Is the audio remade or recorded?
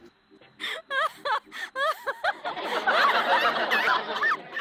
recorded